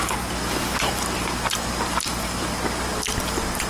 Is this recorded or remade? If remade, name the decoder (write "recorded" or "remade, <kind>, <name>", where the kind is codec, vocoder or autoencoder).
recorded